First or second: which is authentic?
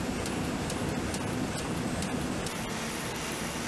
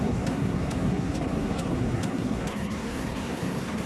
first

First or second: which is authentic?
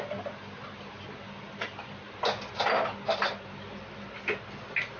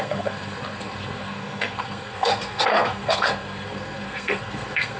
first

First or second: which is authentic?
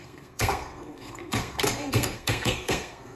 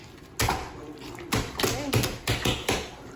second